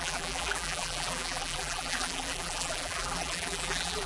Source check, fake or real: fake